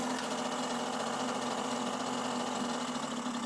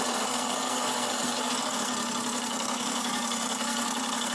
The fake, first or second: second